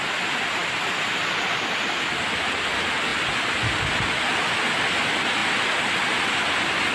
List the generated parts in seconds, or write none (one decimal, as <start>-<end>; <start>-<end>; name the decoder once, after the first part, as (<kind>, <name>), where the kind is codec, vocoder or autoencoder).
none